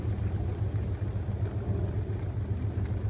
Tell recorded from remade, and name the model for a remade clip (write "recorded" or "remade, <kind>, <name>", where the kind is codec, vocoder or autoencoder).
recorded